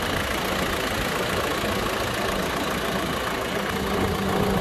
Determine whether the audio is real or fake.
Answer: real